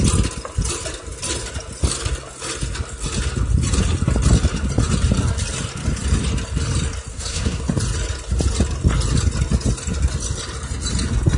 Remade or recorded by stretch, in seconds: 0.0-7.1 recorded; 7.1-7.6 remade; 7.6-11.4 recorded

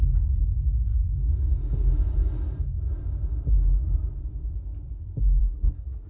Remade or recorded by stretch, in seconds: 0.0-5.4 recorded; 5.4-6.1 remade

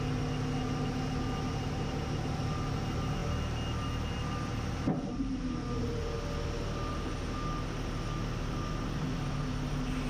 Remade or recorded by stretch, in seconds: 0.0-10.1 recorded

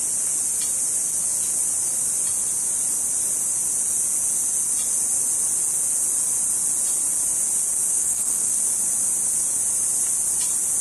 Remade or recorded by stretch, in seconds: 0.0-7.9 recorded; 7.9-8.6 remade; 8.6-10.8 recorded

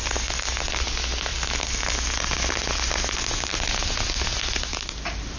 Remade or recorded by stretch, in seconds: 0.0-5.4 recorded

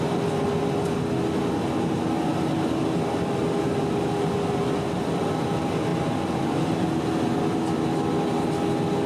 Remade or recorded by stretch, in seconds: 0.0-9.1 recorded